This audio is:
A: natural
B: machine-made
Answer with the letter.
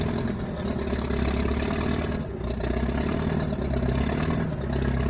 A